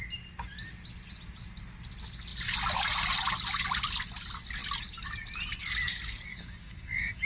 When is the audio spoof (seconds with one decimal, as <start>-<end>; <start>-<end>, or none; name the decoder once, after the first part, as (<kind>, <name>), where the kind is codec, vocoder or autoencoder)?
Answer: 6.3-7.2 (codec, DAC)